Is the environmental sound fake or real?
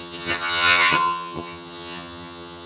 fake